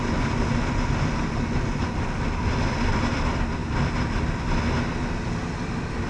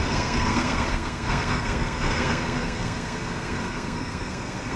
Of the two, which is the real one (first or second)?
first